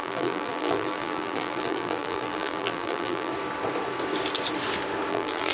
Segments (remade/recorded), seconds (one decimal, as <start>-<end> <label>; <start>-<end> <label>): 0.0-3.3 remade; 3.3-5.1 recorded; 5.1-5.5 remade